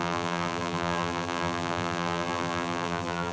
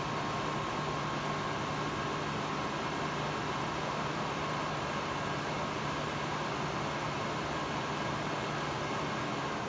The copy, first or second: first